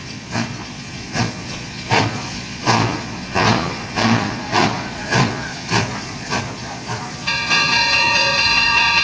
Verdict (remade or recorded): remade